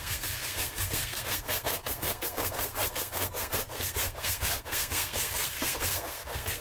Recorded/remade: remade